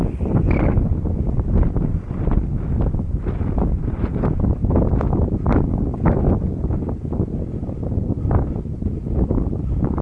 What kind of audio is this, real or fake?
real